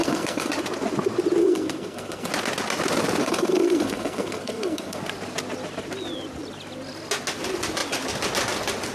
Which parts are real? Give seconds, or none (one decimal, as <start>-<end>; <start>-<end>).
0.5-1.4; 2.3-3.2; 5.0-8.9